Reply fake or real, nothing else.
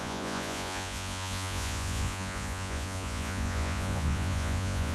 fake